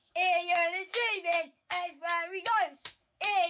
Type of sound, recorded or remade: remade